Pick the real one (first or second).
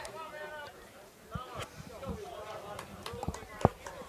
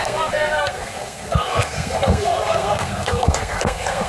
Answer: first